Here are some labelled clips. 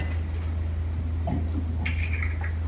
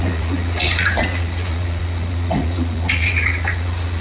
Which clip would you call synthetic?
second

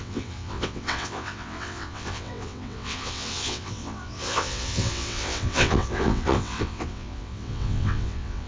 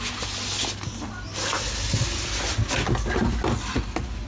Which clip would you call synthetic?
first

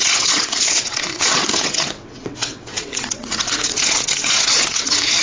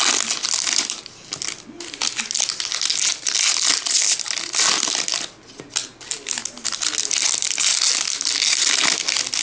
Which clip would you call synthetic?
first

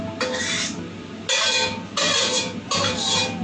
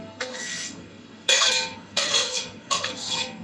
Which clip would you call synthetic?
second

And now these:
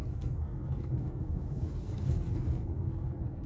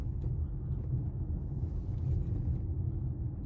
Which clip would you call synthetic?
first